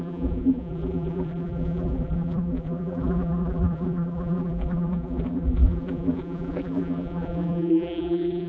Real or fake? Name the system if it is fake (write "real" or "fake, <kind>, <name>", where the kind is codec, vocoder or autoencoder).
fake, vocoder, BigVGAN v2